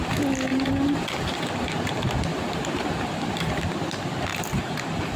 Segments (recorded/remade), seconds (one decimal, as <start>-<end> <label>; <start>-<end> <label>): 0.0-0.5 recorded; 0.5-1.4 remade; 1.4-2.3 recorded; 2.3-3.5 remade; 3.5-4.3 recorded; 4.3-5.2 remade